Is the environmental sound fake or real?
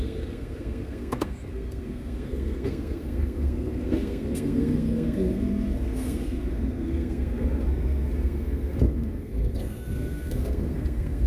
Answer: fake